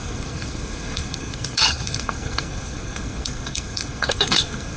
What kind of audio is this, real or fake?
fake